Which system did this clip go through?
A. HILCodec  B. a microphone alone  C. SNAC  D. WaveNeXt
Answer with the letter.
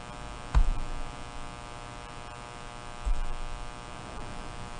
B